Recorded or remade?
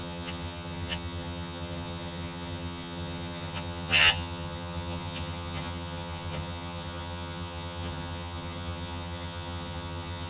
remade